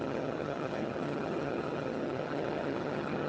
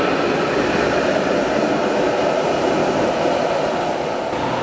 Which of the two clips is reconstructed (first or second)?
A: first